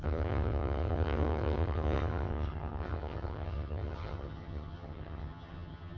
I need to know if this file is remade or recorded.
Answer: remade